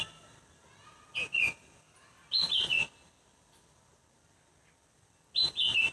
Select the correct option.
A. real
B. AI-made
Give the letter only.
A